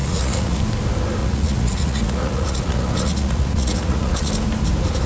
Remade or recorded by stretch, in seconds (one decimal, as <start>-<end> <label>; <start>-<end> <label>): 0.0-0.6 remade; 0.6-1.2 recorded; 1.2-4.3 remade; 4.3-5.1 recorded